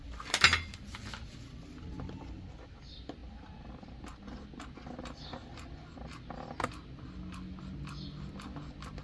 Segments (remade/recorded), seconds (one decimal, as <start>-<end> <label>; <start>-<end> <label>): 0.0-9.0 recorded